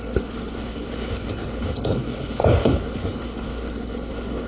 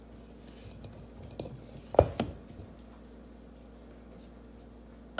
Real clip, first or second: second